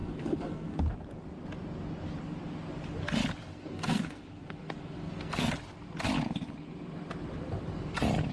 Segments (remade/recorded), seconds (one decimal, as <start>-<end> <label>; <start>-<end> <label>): 0.0-0.8 remade; 0.8-3.5 recorded; 3.5-5.5 remade; 5.5-8.3 recorded